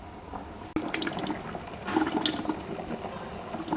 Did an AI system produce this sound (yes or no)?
no